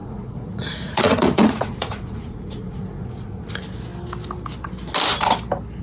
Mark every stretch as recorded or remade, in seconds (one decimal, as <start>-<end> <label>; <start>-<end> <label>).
0.0-3.5 remade; 3.5-5.8 recorded

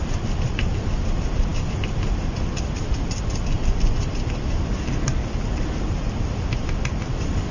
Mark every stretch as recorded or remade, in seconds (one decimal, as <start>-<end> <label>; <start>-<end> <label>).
0.0-7.5 recorded